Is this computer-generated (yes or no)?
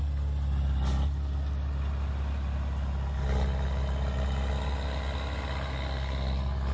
no